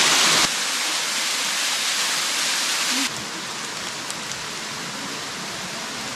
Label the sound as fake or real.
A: real